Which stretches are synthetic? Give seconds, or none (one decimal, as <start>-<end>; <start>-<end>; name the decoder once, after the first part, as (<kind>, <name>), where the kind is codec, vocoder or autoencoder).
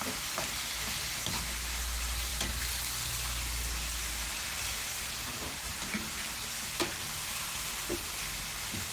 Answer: none